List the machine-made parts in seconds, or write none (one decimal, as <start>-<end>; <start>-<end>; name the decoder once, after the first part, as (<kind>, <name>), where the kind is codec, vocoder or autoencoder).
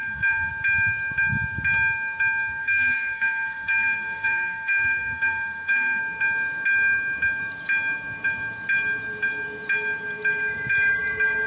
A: 0.0-0.5 (codec, SNAC); 2.6-6.0